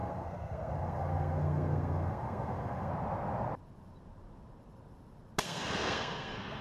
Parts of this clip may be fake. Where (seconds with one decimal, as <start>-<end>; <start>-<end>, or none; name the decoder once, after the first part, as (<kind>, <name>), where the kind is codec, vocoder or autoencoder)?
0.0-2.9 (codec, SNAC); 5.4-6.6